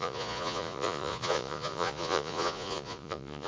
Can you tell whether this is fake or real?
fake